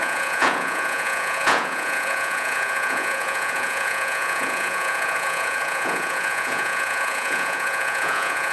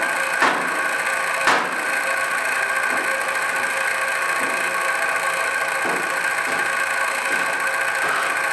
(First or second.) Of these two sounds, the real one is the second